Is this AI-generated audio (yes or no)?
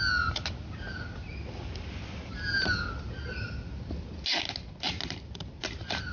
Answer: no